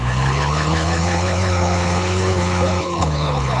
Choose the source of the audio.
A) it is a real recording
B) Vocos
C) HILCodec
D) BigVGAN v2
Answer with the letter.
C